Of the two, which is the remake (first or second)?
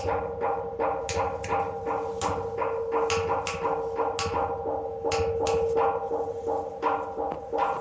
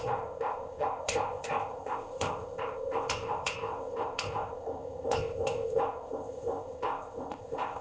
second